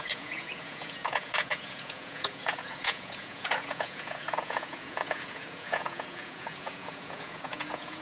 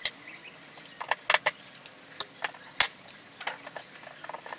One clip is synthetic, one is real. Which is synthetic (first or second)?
first